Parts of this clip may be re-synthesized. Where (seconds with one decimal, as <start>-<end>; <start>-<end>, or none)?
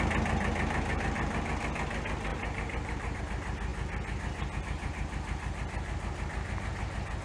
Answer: 2.3-3.2